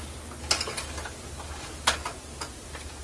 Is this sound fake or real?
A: real